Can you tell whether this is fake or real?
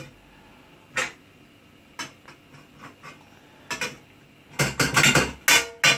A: real